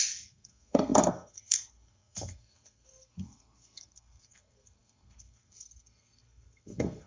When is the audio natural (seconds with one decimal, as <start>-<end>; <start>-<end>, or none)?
none

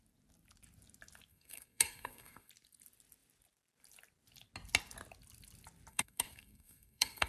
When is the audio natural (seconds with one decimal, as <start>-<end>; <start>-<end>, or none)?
0.0-1.3; 2.5-5.9

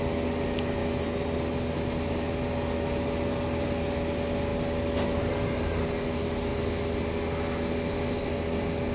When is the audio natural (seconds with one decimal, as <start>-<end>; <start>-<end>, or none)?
0.0-8.9

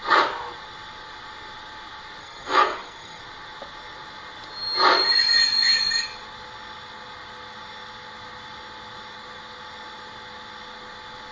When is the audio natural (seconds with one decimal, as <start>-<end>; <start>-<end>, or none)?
0.0-2.2; 3.2-11.3